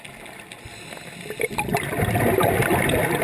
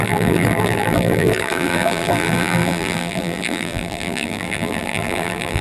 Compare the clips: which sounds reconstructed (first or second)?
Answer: second